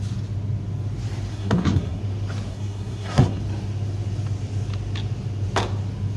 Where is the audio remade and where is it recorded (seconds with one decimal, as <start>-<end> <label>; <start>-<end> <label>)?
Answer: 0.0-1.3 recorded; 1.3-2.0 remade; 2.0-2.5 recorded; 2.5-3.4 remade; 3.4-6.2 recorded

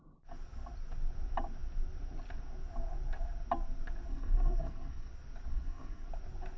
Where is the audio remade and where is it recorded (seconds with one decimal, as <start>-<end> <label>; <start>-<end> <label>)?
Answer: 0.0-4.1 recorded; 4.1-5.1 remade; 5.1-5.5 recorded; 5.5-6.1 remade; 6.1-6.6 recorded